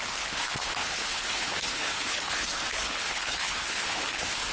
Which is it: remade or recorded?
remade